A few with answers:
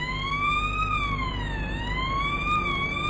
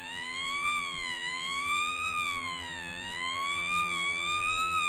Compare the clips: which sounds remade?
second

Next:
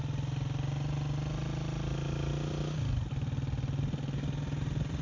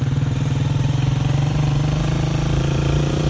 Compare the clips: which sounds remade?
second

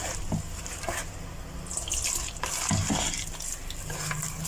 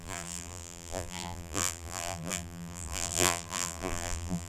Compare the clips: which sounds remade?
second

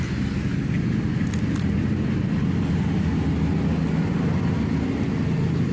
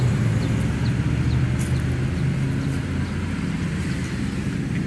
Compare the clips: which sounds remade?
second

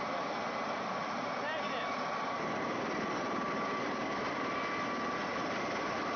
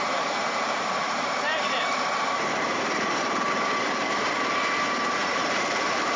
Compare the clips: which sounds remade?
second